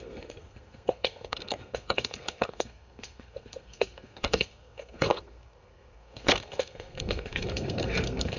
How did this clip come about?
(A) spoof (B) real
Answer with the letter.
A